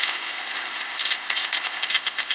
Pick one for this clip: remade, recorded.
remade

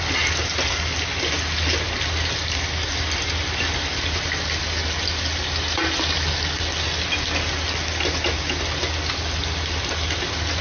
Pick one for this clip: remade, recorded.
recorded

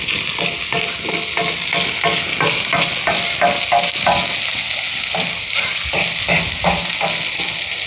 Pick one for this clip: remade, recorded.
recorded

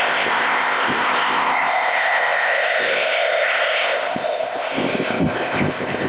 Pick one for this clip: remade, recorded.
remade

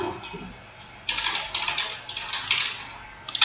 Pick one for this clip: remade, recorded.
recorded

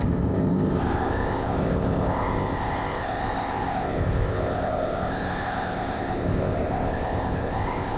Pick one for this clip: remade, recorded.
remade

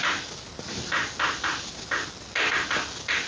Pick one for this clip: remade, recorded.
recorded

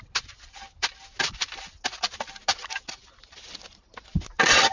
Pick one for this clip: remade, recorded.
recorded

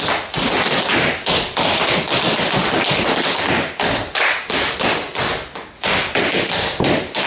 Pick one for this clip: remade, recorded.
recorded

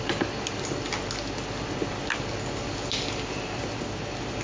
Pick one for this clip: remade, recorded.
recorded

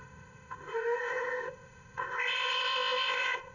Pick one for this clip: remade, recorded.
remade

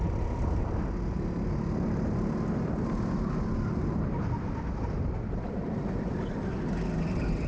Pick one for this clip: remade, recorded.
recorded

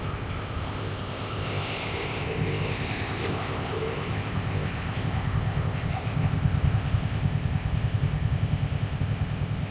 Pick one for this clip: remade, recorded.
remade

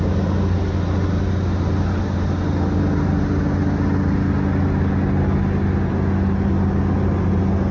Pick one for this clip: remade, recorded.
recorded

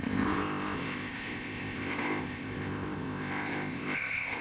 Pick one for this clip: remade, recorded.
remade